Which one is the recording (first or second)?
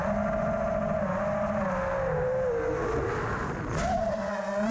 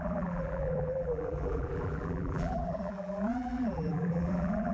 first